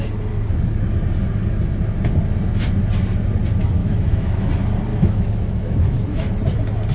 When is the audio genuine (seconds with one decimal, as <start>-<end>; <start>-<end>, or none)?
0.0-3.8; 4.5-4.9; 6.3-6.9